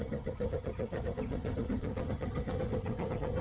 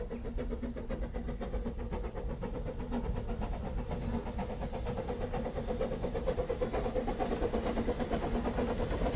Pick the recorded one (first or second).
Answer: second